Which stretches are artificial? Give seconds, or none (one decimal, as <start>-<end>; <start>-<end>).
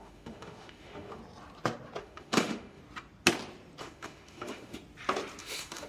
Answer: 0.0-1.2; 2.0-2.8; 3.8-4.8; 5.4-5.9